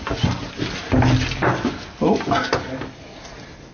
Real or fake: real